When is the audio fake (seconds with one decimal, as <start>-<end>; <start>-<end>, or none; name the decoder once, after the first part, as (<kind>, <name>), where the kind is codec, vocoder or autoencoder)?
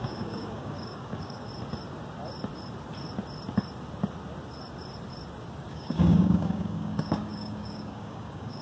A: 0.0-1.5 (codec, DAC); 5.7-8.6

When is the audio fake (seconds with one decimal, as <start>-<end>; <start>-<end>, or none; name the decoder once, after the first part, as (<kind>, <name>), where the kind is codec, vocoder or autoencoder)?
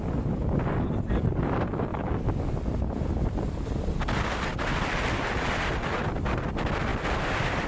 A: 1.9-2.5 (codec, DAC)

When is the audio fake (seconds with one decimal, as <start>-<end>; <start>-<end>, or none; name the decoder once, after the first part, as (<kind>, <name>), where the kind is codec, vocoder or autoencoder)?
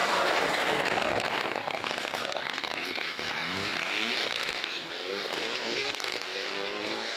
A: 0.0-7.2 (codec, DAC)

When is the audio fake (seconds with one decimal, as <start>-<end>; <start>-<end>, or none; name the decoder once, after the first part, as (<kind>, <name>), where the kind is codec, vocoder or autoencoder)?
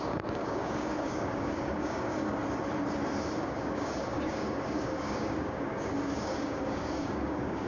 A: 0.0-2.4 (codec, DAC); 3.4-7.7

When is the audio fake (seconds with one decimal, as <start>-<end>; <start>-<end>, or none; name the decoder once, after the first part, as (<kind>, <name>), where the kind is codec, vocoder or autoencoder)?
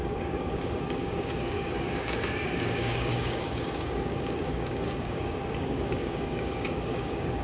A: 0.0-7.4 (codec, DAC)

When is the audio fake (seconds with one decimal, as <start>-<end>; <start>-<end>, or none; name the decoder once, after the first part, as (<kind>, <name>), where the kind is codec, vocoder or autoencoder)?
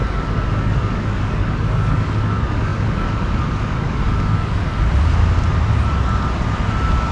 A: 0.0-4.7 (codec, DAC)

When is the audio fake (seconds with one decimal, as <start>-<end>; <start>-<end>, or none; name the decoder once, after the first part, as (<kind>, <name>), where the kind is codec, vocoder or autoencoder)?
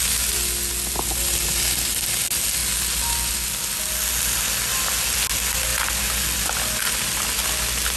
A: none